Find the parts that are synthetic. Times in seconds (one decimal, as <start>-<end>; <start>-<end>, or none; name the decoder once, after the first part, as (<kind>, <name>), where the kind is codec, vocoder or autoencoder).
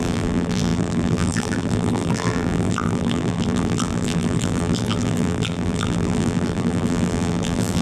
0.0-7.8 (vocoder, BigVGAN v2)